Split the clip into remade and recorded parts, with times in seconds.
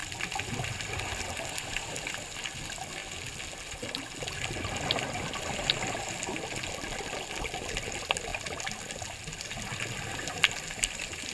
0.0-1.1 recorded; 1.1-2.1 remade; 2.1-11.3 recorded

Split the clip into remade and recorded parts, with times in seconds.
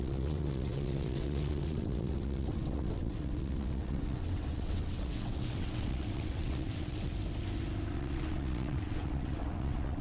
0.0-7.1 remade; 7.1-7.9 recorded; 7.9-10.0 remade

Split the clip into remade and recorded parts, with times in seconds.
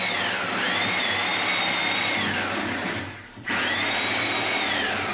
0.0-5.1 recorded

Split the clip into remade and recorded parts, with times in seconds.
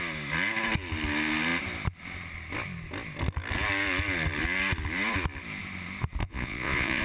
0.0-6.2 recorded; 6.2-7.0 remade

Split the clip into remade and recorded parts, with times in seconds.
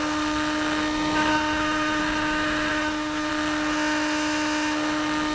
0.0-1.3 recorded; 1.3-2.0 remade; 2.0-2.7 recorded; 2.7-3.3 remade; 3.3-5.3 recorded